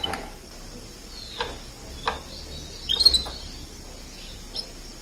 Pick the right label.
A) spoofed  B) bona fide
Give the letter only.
B